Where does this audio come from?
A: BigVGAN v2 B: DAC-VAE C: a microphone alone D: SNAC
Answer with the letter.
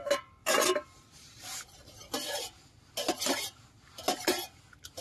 C